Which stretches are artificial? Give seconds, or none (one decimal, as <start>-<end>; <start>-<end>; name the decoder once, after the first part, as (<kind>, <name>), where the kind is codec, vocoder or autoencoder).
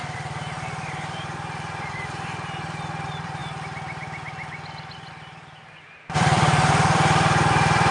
0.0-3.4 (vocoder, BigVGAN v2); 5.1-7.9